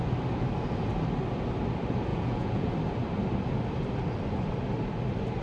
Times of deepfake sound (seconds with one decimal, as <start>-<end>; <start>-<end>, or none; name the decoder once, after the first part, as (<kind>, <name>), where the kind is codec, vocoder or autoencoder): 2.1-2.7 (vocoder, Vocos)